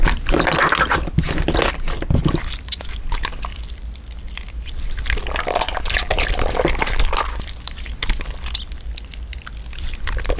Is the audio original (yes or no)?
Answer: yes